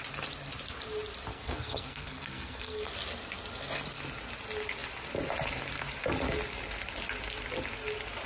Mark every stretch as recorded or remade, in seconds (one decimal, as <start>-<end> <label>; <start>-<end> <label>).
0.0-1.3 recorded; 1.3-2.9 remade; 2.9-8.3 recorded